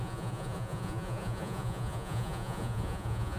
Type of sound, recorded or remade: remade